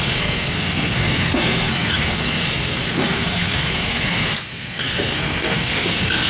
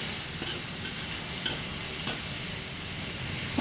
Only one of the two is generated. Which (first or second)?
first